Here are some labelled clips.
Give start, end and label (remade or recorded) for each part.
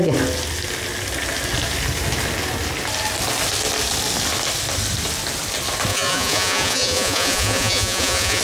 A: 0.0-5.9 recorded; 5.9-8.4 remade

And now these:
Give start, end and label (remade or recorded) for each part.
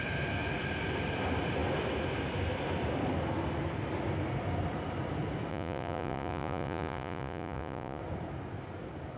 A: 0.0-5.5 recorded; 5.5-8.0 remade; 8.0-9.2 recorded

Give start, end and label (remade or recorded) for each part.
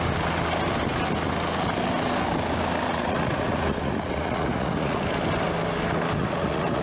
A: 0.0-2.9 recorded; 2.9-5.0 remade; 5.0-6.2 recorded; 6.2-6.8 remade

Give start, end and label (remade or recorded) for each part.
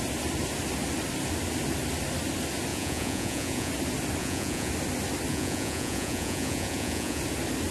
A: 0.0-2.7 recorded; 2.7-3.7 remade; 3.7-4.2 recorded; 4.2-4.7 remade; 4.7-5.3 recorded; 5.3-7.2 remade; 7.2-7.7 recorded